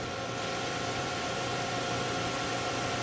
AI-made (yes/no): yes